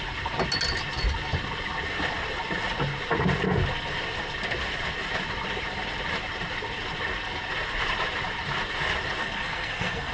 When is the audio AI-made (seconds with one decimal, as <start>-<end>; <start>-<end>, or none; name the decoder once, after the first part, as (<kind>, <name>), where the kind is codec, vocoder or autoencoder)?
9.2-10.1 (codec, SNAC)